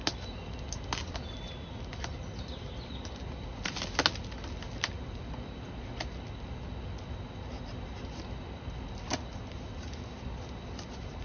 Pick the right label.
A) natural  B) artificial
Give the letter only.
A